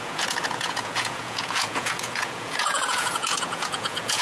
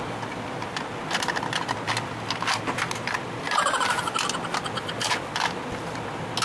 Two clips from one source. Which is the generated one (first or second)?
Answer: first